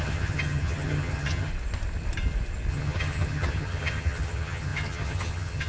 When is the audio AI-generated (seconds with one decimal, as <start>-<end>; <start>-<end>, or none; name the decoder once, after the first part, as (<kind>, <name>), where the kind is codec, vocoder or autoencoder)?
0.0-1.5 (vocoder, HiFi-GAN); 2.7-5.7